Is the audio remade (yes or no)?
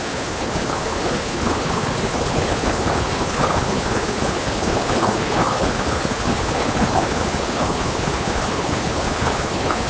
yes